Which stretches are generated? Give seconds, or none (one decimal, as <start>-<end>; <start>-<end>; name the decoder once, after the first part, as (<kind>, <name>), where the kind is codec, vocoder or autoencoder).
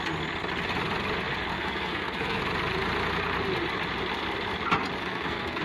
1.5-2.4 (codec, SNAC); 5.0-5.6